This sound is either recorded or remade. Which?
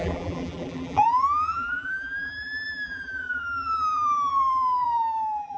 remade